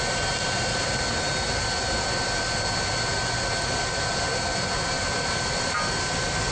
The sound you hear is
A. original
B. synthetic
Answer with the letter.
A